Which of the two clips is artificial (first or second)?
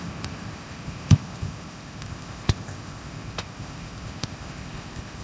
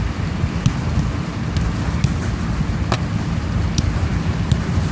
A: first